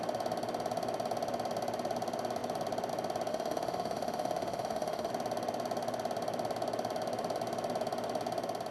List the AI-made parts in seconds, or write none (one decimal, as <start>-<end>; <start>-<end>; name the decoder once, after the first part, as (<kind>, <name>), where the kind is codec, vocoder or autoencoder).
3.3-5.1 (autoencoder, DAC-VAE)